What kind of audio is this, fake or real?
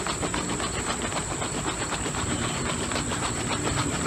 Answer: real